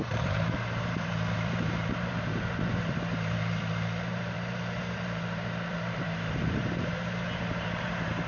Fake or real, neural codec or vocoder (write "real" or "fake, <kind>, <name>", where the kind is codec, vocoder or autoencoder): fake, vocoder, BigVGAN v2